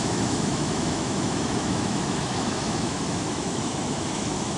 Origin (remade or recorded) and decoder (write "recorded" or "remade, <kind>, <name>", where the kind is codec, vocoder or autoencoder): remade, autoencoder, DAC-VAE